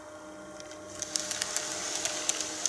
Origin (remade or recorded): recorded